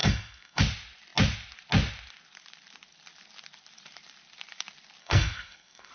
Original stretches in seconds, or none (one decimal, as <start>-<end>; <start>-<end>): 0.6-5.0